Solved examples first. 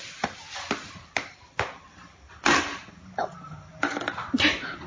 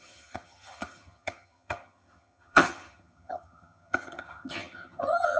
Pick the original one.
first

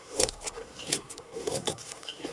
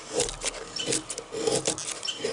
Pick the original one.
second